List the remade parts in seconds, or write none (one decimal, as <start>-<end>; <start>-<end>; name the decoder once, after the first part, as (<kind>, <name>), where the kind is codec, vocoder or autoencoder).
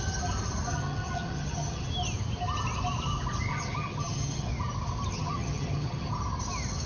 0.7-1.9 (vocoder, HiFi-GAN); 3.5-4.5; 5.1-6.1